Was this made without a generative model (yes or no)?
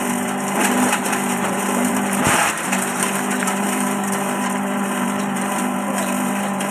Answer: no